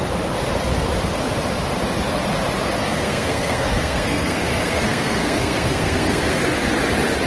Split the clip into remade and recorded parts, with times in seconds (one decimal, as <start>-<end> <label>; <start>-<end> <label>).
0.0-2.8 recorded; 2.8-6.4 remade; 6.4-7.3 recorded